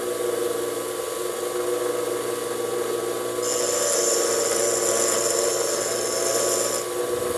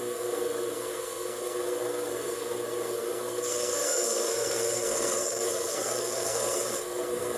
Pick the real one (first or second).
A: first